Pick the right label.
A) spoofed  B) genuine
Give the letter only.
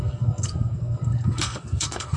A